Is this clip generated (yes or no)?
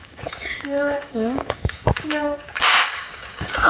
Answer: yes